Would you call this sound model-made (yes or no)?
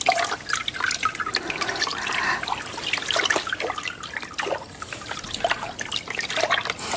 no